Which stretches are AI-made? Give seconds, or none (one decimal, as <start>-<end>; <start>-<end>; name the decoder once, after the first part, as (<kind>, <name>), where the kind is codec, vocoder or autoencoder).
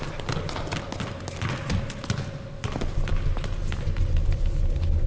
none